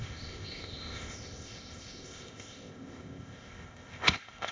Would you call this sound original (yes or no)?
no